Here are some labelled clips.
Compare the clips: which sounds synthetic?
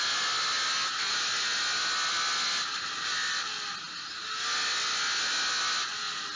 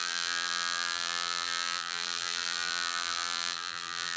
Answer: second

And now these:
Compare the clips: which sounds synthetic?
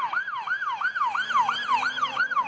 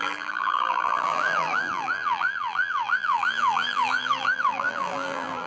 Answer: second